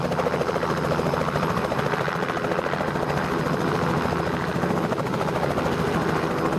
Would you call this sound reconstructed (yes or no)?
no